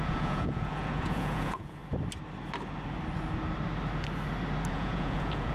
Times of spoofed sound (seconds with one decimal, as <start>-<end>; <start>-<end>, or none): 0.0-1.8; 4.7-5.5

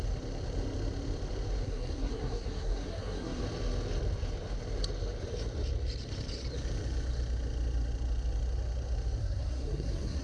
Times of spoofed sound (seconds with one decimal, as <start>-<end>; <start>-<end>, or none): 1.6-3.4; 9.2-10.2